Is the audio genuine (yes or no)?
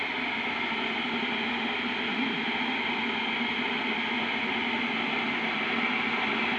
yes